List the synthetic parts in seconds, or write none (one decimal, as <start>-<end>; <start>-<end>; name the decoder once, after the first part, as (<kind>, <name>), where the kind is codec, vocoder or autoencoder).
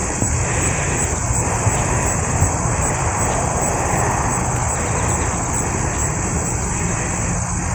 0.0-4.0 (vocoder, BigVGAN v2); 6.0-7.0